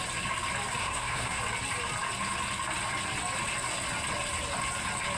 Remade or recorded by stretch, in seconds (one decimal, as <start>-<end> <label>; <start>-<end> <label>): 0.0-0.8 recorded; 0.8-1.4 remade; 1.4-5.2 recorded